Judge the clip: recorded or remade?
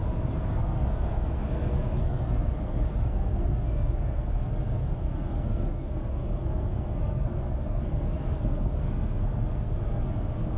remade